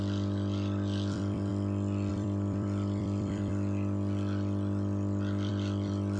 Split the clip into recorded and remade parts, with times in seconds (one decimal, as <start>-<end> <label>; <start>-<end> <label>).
0.0-1.5 remade; 1.5-2.1 recorded; 2.1-3.5 remade; 3.5-5.5 recorded; 5.5-6.2 remade